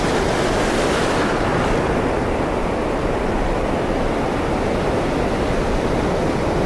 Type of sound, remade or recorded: recorded